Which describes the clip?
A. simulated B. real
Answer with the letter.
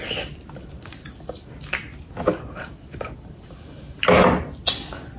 B